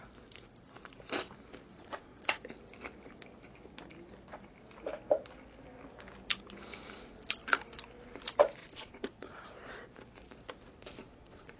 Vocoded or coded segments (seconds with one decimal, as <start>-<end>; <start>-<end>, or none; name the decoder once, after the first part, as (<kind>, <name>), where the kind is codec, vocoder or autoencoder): 1.7-2.4 (vocoder, Vocos); 8.6-9.4; 11.0-11.6